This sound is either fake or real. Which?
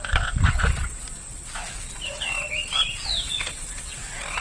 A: fake